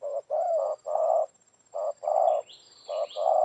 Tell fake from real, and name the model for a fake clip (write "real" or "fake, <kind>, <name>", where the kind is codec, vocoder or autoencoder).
real